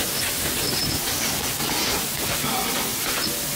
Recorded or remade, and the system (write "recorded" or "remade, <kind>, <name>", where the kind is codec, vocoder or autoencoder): recorded